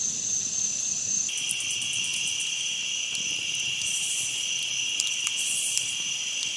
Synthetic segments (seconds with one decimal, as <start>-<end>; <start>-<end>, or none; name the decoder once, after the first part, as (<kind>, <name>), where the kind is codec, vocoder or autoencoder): none